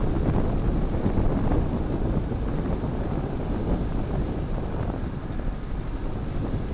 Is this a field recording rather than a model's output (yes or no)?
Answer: yes